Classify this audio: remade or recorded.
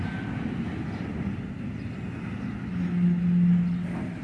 recorded